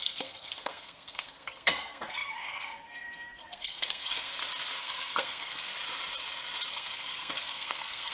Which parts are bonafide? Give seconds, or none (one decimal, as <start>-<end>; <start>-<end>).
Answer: 4.3-4.8; 5.7-6.7